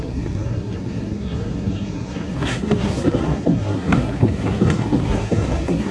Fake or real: fake